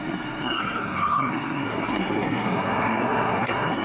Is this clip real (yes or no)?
no